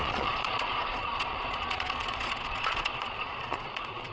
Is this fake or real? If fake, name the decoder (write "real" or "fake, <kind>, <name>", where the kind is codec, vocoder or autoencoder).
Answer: fake, vocoder, Vocos